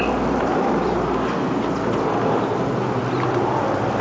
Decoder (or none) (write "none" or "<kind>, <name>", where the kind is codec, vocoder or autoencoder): none